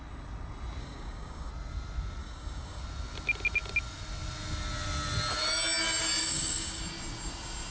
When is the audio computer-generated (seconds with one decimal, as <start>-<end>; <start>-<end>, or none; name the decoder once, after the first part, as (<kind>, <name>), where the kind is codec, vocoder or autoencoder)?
0.8-1.5 (codec, DAC); 2.2-2.8; 6.2-6.8